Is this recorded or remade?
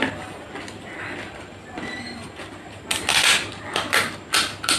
recorded